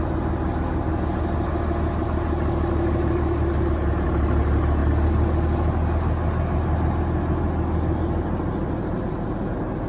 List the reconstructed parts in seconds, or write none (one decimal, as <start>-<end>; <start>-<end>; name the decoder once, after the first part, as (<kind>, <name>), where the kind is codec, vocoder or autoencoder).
none